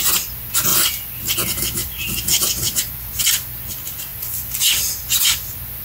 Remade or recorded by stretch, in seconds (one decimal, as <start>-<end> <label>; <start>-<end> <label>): 0.0-0.7 recorded; 0.7-1.3 remade; 1.3-1.8 recorded; 1.8-2.5 remade; 2.5-5.8 recorded